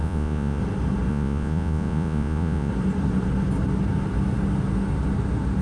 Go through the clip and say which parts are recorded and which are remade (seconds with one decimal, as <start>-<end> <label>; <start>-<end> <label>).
0.0-0.6 remade; 0.6-1.1 recorded; 1.1-2.7 remade; 2.7-5.6 recorded